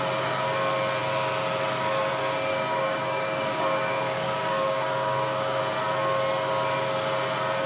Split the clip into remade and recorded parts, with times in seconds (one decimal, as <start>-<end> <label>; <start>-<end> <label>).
0.0-2.5 recorded; 2.5-5.6 remade; 5.6-7.7 recorded